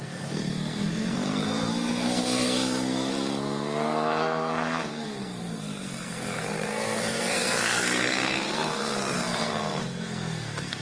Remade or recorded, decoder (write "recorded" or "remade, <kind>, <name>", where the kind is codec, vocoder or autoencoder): remade, codec, SNAC